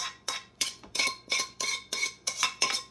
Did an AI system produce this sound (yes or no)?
yes